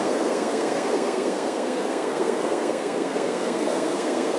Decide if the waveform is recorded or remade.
remade